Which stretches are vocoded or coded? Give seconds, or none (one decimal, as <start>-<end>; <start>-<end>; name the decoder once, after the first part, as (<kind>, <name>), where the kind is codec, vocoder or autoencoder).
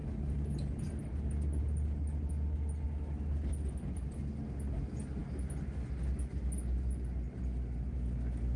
none